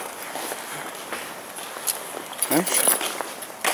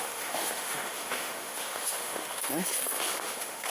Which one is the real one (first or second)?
first